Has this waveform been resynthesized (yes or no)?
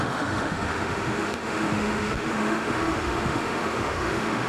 yes